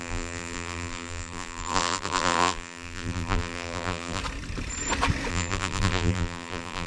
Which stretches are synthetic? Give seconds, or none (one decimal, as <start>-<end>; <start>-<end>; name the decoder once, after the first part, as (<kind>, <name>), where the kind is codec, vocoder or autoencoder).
0.0-4.2 (vocoder, BigVGAN v2); 5.3-6.9